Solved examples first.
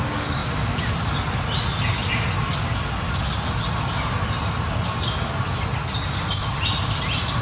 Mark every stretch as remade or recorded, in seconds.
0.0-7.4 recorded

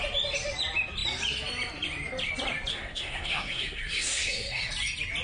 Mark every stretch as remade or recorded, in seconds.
0.0-2.7 recorded; 2.7-4.7 remade; 4.7-5.2 recorded

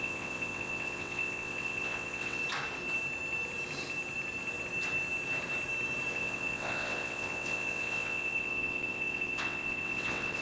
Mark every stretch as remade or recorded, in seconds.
0.0-2.4 remade; 2.4-6.1 recorded; 6.1-10.4 remade

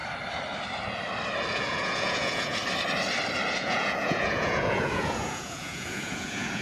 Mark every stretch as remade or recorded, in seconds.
0.0-1.5 recorded; 1.5-2.6 remade; 2.6-3.5 recorded; 3.5-6.6 remade

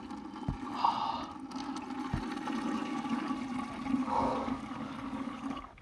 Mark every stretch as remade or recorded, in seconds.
0.0-2.8 recorded; 2.8-3.3 remade; 3.3-4.0 recorded; 4.0-5.8 remade